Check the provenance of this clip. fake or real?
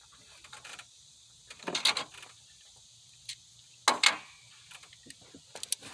real